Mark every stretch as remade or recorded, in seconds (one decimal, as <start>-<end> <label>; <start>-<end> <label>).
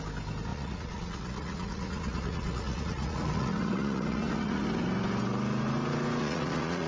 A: 0.0-0.5 recorded; 0.5-4.6 remade; 4.6-6.2 recorded; 6.2-6.9 remade